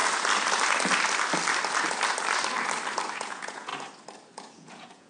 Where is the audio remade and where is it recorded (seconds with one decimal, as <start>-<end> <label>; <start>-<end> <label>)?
0.0-3.1 recorded; 3.1-3.7 remade; 3.7-4.5 recorded; 4.5-5.1 remade